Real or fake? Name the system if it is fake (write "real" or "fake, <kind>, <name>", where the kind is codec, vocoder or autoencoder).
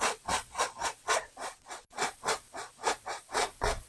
fake, vocoder, Vocos